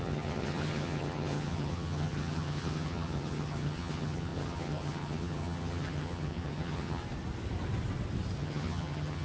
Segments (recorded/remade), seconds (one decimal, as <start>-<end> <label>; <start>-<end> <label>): 0.0-7.0 remade; 7.0-8.4 recorded; 8.4-9.2 remade